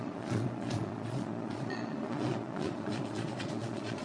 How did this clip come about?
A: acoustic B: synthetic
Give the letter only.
B